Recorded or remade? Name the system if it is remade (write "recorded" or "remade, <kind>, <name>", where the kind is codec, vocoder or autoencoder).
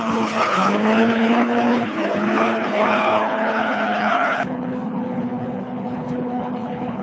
remade, codec, HILCodec